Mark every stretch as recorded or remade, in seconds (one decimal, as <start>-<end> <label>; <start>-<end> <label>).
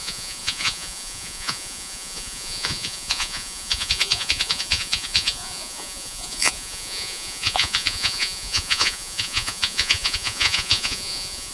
0.0-11.5 remade